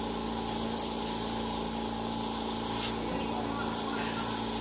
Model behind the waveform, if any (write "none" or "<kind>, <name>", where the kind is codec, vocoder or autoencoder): none